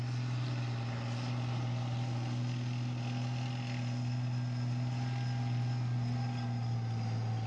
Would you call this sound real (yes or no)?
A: yes